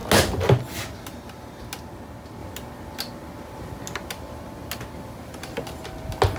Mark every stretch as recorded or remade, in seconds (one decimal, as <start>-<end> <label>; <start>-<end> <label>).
0.0-6.4 recorded